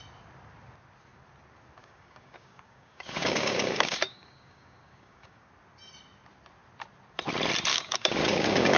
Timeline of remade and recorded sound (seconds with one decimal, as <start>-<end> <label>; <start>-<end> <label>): 0.0-1.8 recorded; 1.8-5.5 remade; 5.5-7.7 recorded; 7.7-8.8 remade

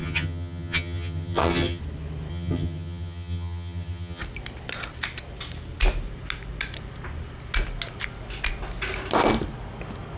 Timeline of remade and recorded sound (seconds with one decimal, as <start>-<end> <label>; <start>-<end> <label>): 0.0-1.8 remade; 1.8-2.3 recorded; 2.3-4.2 remade; 4.2-10.2 recorded